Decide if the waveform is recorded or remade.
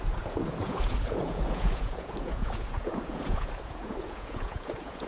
remade